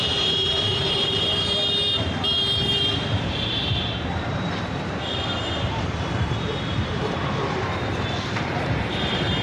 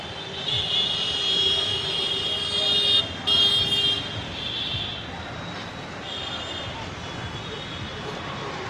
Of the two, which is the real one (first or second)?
second